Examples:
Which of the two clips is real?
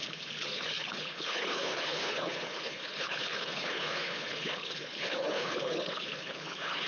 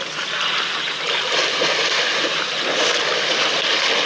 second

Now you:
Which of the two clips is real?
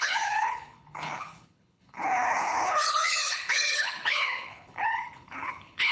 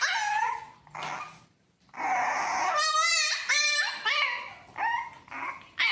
second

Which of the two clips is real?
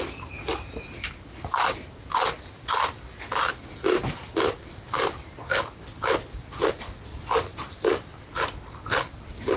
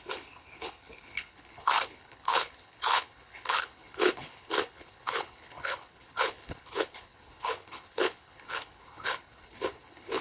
first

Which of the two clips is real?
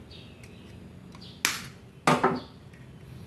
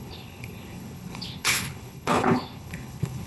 first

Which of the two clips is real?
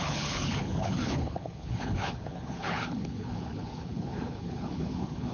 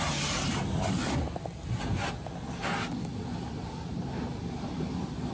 second